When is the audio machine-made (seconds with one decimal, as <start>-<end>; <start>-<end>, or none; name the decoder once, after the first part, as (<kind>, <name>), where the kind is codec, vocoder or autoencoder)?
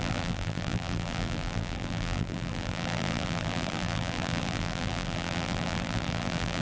0.0-6.6 (vocoder, BigVGAN v2)